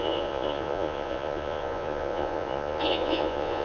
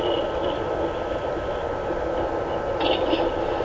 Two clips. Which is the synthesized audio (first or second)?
first